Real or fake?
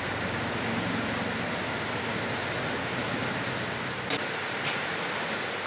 real